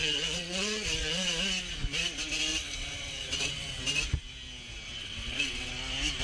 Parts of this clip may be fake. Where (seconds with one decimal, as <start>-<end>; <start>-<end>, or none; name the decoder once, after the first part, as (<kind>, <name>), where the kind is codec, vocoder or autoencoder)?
0.0-1.3 (vocoder, WaveNeXt); 2.5-3.8; 5.0-5.7